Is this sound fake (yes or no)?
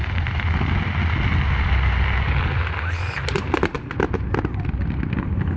no